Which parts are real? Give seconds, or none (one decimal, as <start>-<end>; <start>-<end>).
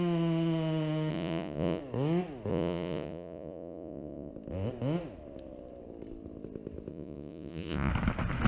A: 0.0-1.1; 1.8-2.5; 4.3-6.9; 7.9-8.5